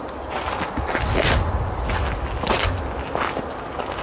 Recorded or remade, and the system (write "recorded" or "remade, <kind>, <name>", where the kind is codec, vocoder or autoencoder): recorded